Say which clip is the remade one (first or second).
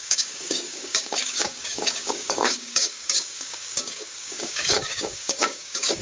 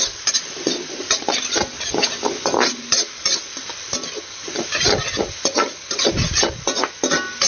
first